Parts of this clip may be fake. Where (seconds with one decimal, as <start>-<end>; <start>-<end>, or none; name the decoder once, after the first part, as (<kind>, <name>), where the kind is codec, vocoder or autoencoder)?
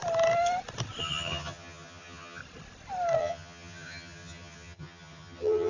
1.0-2.4 (vocoder, HiFi-GAN); 3.2-5.7